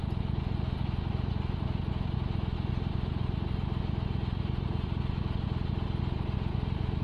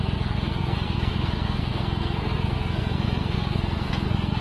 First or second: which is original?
first